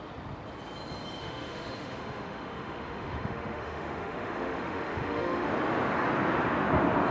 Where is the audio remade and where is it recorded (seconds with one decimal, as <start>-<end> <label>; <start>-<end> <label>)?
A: 0.0-1.2 recorded; 1.2-5.5 remade; 5.5-7.1 recorded